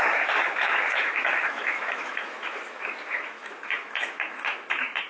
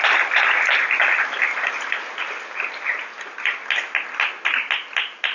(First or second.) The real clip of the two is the second